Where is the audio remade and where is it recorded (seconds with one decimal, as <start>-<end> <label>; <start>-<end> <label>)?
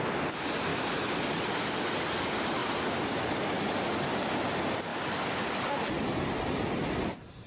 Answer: 0.0-0.7 recorded; 0.7-1.8 remade; 1.8-4.9 recorded; 4.9-5.7 remade; 5.7-7.5 recorded